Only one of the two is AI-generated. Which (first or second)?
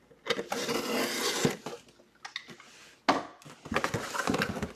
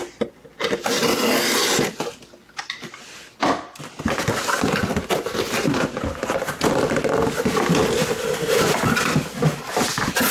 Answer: second